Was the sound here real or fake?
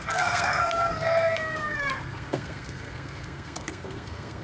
fake